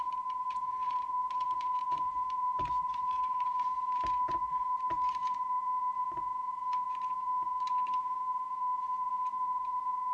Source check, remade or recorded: remade